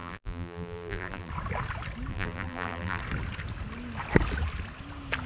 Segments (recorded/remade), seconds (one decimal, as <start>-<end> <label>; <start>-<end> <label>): 0.0-1.3 remade; 1.3-2.1 recorded; 2.1-3.0 remade; 3.0-5.3 recorded